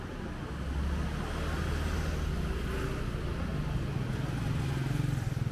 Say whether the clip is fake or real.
real